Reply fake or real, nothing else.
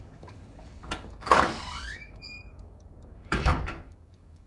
fake